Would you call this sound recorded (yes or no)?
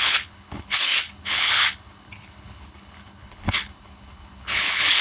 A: no